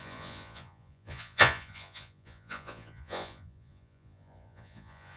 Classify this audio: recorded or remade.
remade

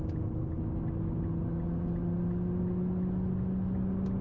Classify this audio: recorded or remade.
recorded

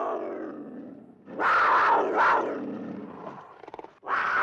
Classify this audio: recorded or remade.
recorded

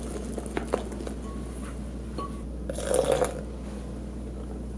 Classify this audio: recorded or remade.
recorded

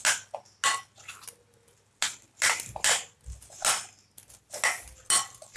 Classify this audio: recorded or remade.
recorded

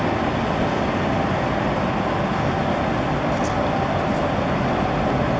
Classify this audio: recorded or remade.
recorded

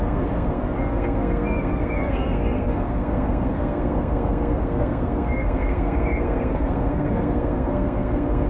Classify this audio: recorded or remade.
remade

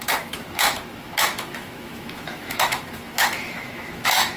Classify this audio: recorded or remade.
remade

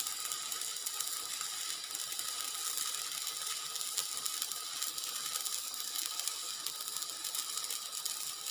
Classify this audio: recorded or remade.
recorded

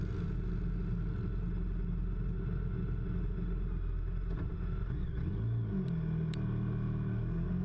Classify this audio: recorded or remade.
recorded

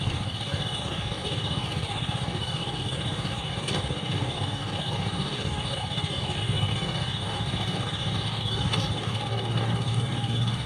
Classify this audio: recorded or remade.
remade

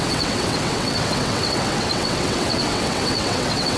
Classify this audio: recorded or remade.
remade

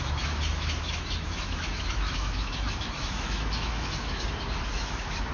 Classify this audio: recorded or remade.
remade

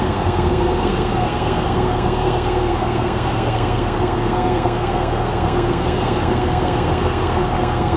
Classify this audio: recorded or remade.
remade